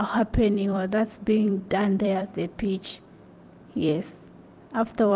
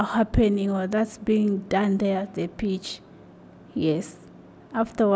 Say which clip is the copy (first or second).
first